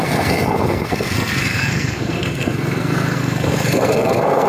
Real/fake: fake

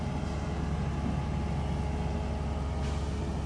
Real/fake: real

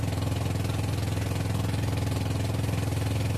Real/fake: real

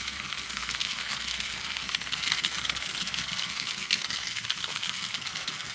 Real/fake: fake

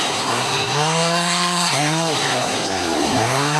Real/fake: fake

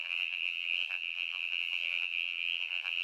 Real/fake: fake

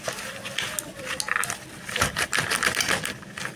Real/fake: real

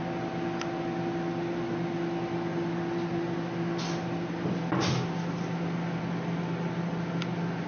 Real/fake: real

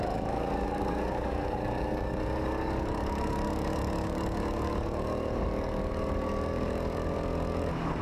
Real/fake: fake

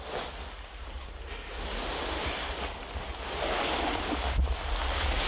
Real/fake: real